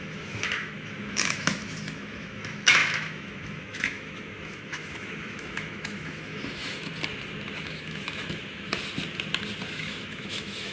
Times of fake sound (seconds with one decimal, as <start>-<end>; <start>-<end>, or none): 0.0-6.9; 7.6-8.7; 9.7-10.7